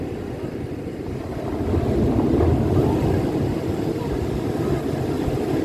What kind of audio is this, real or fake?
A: real